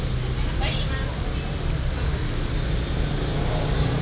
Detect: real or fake real